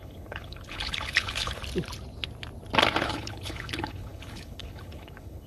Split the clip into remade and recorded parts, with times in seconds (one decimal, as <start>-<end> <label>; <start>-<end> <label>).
0.0-1.6 remade; 1.6-3.0 recorded; 3.0-5.5 remade